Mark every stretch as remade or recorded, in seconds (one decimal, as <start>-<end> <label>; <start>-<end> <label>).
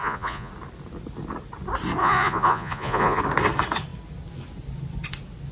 0.0-0.5 remade; 0.5-2.0 recorded; 2.0-3.2 remade; 3.2-5.5 recorded